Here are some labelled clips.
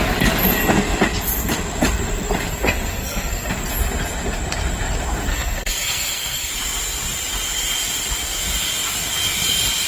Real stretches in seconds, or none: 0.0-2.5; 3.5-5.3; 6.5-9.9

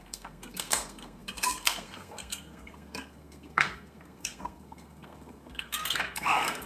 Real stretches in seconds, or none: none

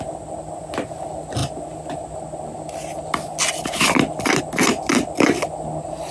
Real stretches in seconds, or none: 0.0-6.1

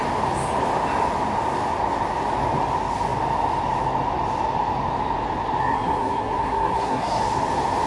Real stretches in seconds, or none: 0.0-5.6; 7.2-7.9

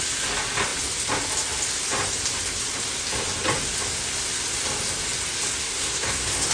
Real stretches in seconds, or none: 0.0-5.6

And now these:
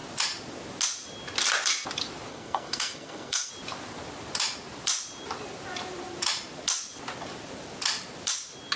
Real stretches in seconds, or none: 0.0-2.3; 3.5-8.8